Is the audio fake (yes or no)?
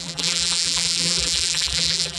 yes